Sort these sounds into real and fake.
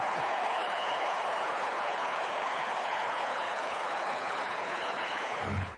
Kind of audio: fake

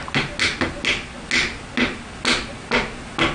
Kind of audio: real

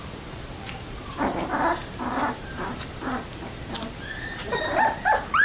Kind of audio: fake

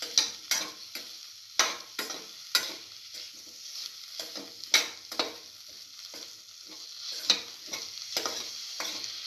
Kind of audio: real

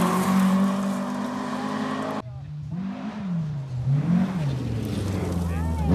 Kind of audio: real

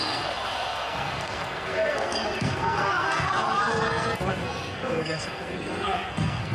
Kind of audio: fake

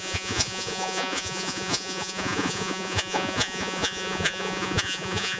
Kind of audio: fake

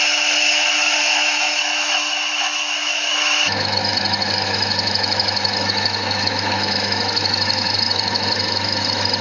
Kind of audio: fake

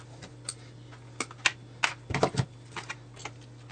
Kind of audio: real